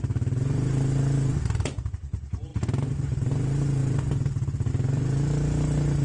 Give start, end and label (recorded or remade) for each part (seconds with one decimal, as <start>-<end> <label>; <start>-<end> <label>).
0.0-2.5 recorded; 2.5-3.3 remade; 3.3-6.0 recorded